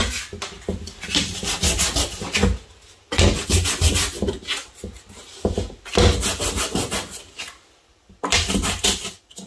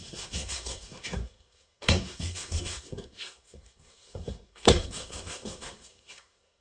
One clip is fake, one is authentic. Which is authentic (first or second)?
first